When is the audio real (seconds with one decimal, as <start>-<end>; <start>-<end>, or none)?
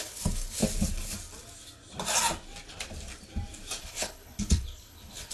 0.6-3.8